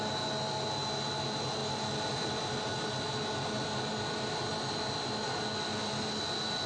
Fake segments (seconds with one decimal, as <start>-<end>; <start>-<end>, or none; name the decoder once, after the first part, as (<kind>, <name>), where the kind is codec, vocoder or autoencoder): none